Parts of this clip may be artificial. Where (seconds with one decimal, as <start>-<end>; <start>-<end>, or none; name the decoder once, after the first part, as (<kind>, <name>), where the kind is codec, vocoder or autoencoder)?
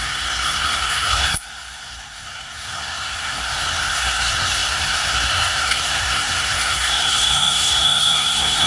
0.0-8.7 (codec, SNAC)